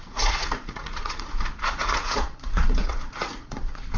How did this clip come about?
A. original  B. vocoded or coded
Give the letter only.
B